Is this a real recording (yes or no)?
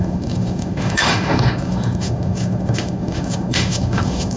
no